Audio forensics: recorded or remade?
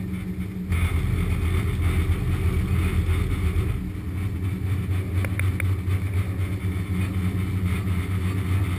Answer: recorded